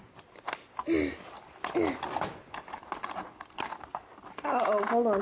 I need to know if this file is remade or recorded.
recorded